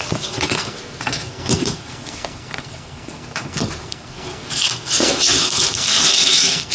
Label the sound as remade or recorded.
remade